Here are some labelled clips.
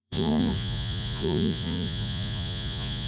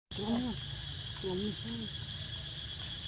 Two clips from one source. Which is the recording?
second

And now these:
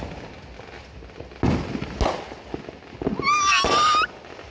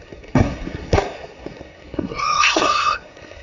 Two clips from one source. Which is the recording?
first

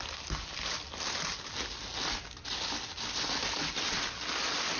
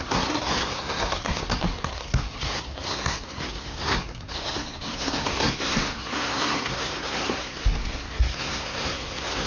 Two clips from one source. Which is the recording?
first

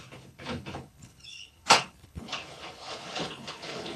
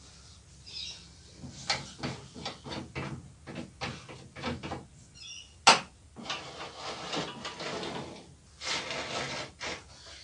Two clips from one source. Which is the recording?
second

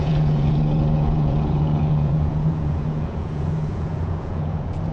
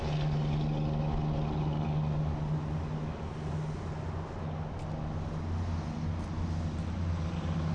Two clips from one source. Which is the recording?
second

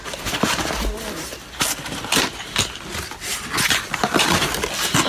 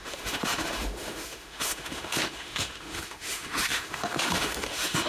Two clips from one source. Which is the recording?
first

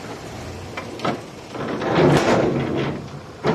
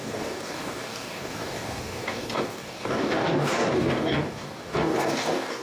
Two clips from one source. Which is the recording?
first